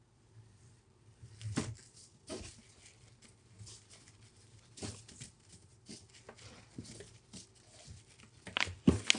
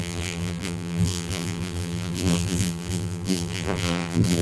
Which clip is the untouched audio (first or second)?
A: first